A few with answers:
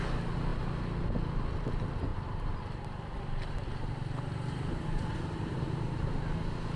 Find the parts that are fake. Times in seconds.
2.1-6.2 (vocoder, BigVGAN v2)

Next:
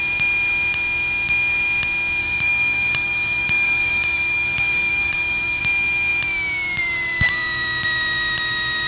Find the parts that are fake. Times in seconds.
2.2-5.6 (codec, DAC)

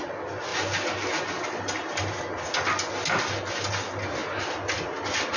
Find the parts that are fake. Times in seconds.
none

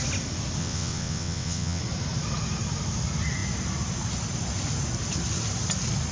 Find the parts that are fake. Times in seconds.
0.6-1.8 (vocoder, WaveNeXt)

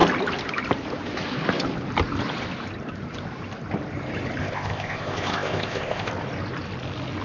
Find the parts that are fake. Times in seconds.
4.4-6.1 (codec, ZipCodec)

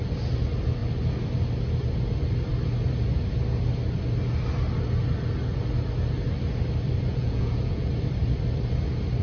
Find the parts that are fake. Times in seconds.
7.1-7.9 (vocoder, Vocos)